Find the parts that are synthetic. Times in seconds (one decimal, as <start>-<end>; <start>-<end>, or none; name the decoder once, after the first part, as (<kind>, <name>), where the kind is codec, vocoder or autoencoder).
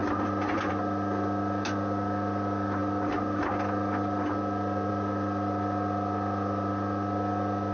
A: none